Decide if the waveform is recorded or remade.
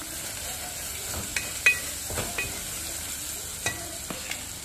recorded